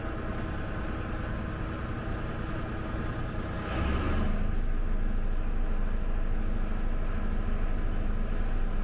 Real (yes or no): yes